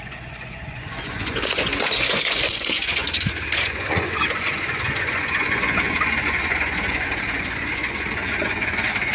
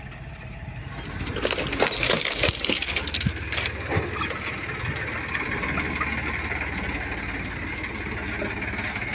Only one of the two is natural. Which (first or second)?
second